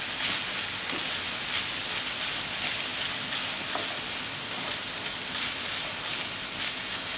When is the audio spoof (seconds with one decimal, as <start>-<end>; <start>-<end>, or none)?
none